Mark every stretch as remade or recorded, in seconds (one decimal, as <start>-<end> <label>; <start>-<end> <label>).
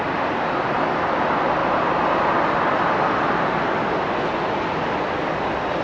0.0-5.8 recorded